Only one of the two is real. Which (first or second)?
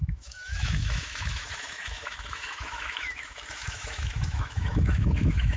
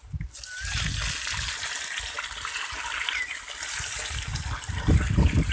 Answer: second